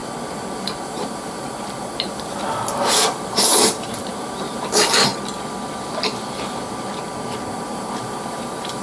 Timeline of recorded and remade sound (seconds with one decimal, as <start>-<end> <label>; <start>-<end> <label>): 0.0-0.8 recorded; 0.8-5.1 remade; 5.1-7.5 recorded; 7.5-8.8 remade

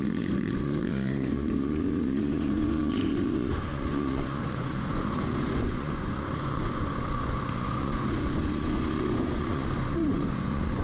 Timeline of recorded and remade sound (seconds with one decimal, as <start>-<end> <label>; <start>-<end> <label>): 0.0-10.8 remade

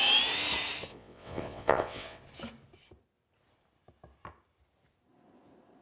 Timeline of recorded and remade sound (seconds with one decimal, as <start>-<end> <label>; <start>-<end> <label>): 0.0-0.9 recorded; 0.9-2.2 remade; 2.2-5.8 recorded

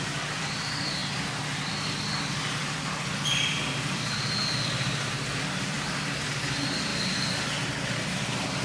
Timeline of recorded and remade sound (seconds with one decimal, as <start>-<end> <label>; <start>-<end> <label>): 0.0-1.0 remade; 1.0-1.5 recorded; 1.5-6.9 remade; 6.9-8.1 recorded; 8.1-8.6 remade

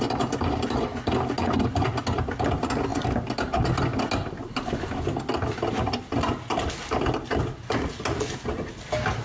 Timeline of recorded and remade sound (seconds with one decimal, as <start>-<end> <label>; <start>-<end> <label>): 0.0-9.2 recorded